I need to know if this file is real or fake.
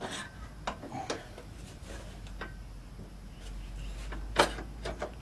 real